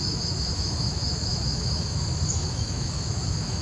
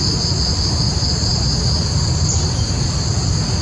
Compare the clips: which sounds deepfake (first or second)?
first